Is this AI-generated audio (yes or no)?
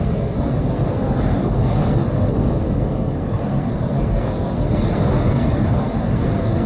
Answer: yes